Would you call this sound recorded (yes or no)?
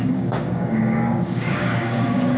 no